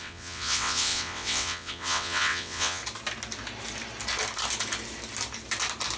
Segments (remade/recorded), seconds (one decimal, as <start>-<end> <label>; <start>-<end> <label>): 0.0-2.8 remade; 2.8-6.0 recorded